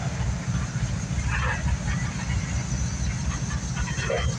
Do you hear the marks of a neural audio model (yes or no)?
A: no